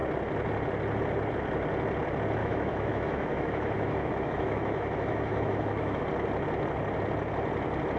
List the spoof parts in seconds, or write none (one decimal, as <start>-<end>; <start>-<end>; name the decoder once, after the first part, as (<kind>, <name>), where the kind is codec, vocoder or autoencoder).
2.4-6.0 (autoencoder, DAC-VAE)